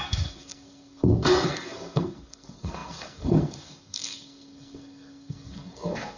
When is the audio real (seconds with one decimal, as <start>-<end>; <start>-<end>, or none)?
none